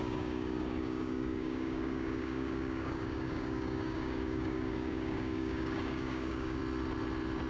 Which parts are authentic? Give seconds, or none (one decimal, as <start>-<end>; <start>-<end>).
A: 6.6-7.5